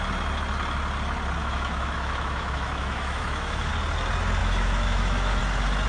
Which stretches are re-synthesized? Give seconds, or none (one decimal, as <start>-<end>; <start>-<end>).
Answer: 1.4-3.7; 4.4-5.4